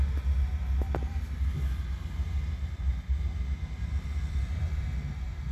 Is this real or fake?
real